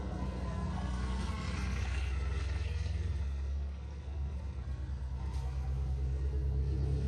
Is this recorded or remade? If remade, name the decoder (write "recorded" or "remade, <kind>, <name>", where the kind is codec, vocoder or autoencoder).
remade, codec, SNAC